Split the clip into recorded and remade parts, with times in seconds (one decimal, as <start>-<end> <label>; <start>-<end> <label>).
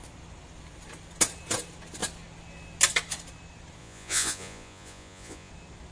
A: 0.0-3.8 recorded; 3.8-5.5 remade; 5.5-5.9 recorded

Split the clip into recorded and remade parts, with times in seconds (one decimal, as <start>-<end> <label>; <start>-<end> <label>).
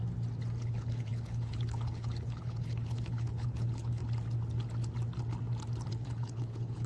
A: 0.0-0.6 recorded; 0.6-4.0 remade; 4.0-5.9 recorded; 5.9-6.9 remade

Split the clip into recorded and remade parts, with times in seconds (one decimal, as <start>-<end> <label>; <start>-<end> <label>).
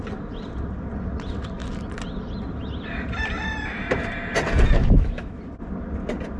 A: 0.0-4.8 recorded; 4.8-5.4 remade; 5.4-6.4 recorded